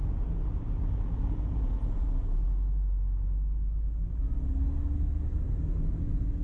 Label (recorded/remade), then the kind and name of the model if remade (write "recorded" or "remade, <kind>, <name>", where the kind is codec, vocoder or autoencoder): recorded